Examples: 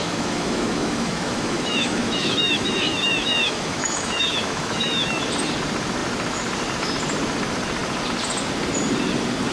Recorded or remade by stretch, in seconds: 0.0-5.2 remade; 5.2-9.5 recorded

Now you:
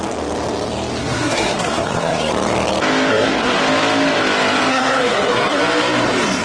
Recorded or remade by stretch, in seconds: 0.0-1.0 recorded; 1.0-2.3 remade; 2.3-3.1 recorded; 3.1-3.6 remade; 3.6-4.7 recorded; 4.7-5.6 remade; 5.6-6.4 recorded

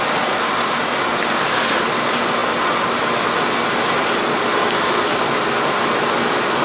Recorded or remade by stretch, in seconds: 0.0-6.6 recorded

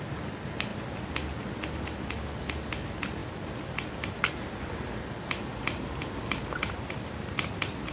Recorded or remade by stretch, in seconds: 0.0-7.9 recorded